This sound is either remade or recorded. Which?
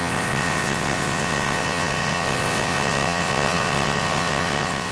remade